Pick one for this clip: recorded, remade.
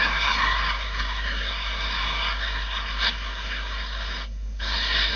remade